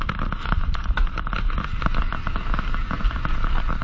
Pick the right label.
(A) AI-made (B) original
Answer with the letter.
B